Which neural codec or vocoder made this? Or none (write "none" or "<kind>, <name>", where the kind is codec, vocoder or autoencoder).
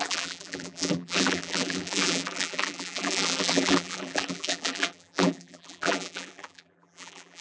vocoder, BigVGAN v2